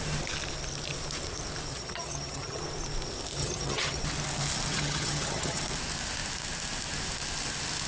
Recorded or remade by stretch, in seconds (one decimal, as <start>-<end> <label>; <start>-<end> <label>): 0.0-1.7 recorded; 1.7-2.6 remade; 2.6-3.4 recorded; 3.4-4.0 remade; 4.0-4.7 recorded; 4.7-5.6 remade; 5.6-7.9 recorded